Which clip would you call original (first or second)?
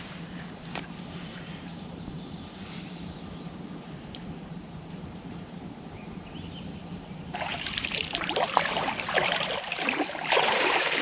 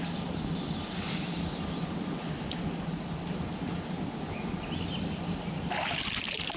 second